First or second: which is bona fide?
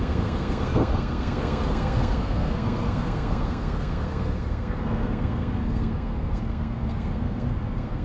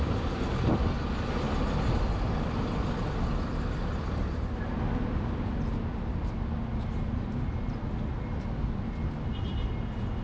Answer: second